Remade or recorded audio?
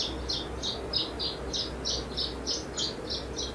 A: recorded